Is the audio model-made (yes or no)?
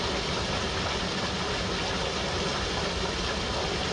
no